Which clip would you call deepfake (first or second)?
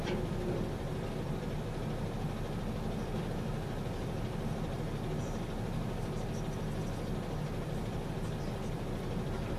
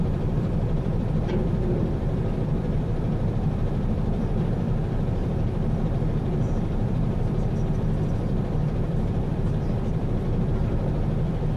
second